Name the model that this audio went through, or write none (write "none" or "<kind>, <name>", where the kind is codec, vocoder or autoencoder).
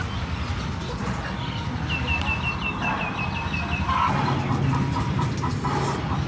none